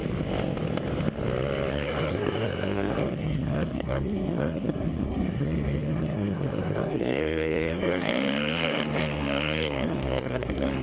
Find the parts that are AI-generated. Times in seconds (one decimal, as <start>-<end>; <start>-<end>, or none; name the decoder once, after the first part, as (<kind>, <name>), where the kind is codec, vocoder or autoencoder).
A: 1.7-10.8 (codec, SNAC)